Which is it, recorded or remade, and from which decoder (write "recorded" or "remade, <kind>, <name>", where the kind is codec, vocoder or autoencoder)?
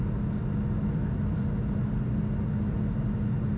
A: recorded